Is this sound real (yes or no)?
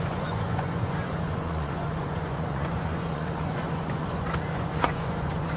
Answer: no